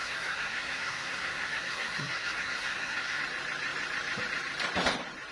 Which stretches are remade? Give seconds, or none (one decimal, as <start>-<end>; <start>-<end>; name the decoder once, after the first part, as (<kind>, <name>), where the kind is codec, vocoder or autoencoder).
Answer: 0.0-3.2 (codec, SNAC)